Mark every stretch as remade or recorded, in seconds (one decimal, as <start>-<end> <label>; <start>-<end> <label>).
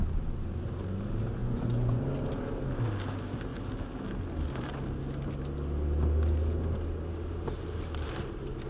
0.0-1.4 recorded; 1.4-2.0 remade; 2.0-8.7 recorded